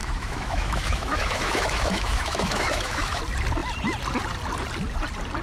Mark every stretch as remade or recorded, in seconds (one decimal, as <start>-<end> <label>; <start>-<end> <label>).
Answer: 0.0-3.2 remade; 3.2-5.4 recorded